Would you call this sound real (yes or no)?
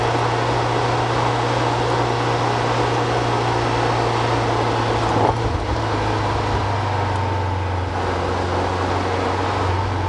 yes